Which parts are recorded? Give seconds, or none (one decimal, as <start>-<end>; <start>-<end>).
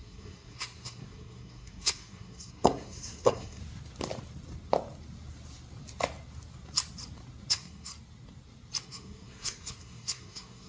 3.6-7.5; 7.9-8.8